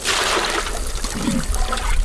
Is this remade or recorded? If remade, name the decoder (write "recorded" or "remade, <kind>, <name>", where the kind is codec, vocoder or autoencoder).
recorded